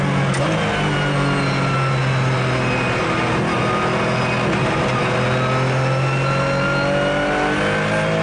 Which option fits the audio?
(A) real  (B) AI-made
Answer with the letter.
A